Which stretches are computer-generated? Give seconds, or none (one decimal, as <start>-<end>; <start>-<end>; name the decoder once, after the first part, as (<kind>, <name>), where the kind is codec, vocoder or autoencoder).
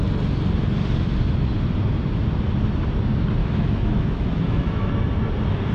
3.4-4.9 (autoencoder, DAC-VAE)